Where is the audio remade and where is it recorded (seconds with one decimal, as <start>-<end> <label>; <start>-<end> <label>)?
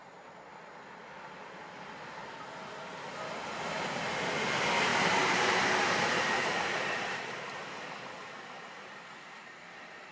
0.0-4.9 recorded; 4.9-10.1 remade